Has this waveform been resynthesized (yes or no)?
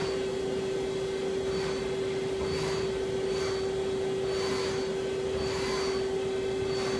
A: no